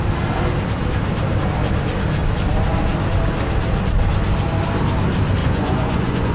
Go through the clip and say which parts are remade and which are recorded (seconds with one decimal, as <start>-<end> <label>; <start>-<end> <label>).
0.0-5.4 recorded; 5.4-6.3 remade